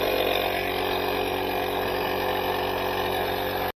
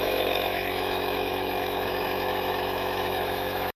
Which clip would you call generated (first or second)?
second